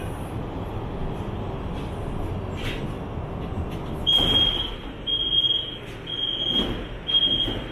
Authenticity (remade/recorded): recorded